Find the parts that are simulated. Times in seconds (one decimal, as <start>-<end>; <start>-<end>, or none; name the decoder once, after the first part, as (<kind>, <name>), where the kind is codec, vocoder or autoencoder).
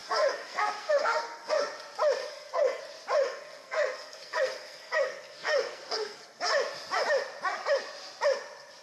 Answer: 0.0-1.6 (codec, SNAC); 2.2-2.8; 3.2-6.4